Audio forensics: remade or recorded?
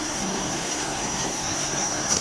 remade